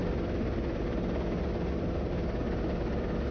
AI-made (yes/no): no